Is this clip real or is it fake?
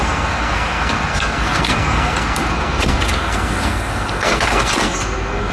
fake